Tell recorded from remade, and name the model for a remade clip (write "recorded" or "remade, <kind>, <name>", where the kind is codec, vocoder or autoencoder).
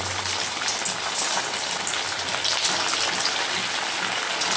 recorded